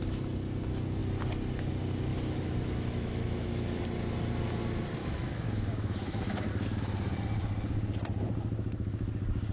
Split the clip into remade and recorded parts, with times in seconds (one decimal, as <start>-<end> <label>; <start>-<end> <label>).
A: 0.0-2.1 recorded; 2.1-3.8 remade; 3.8-5.0 recorded; 5.0-6.5 remade; 6.5-9.5 recorded